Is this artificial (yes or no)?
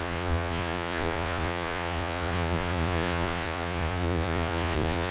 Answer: yes